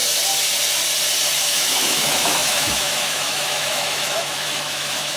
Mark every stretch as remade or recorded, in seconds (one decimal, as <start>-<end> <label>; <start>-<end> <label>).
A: 0.0-1.4 recorded; 1.4-5.2 remade